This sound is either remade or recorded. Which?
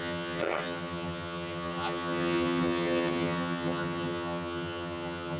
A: remade